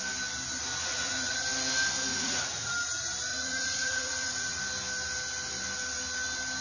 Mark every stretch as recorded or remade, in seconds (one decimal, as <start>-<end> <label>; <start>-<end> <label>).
0.0-0.8 recorded; 0.8-1.4 remade; 1.4-2.1 recorded; 2.1-2.7 remade; 2.7-3.3 recorded; 3.3-4.6 remade; 4.6-6.6 recorded